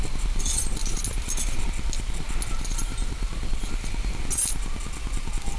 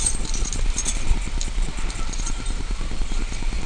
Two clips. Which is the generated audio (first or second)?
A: second